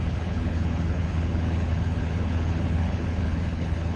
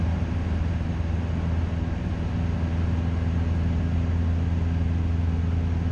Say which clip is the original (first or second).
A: second